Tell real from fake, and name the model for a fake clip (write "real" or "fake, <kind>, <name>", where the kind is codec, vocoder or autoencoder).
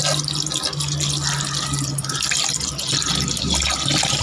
real